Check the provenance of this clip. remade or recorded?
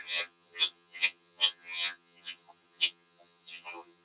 remade